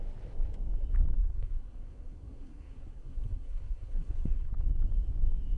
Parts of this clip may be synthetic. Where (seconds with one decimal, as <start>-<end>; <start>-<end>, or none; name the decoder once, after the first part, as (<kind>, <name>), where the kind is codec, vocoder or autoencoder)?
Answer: 1.2-4.5 (codec, SNAC)